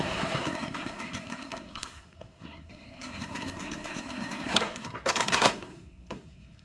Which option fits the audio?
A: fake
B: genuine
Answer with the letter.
A